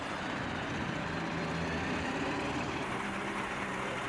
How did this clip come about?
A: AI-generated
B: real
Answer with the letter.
A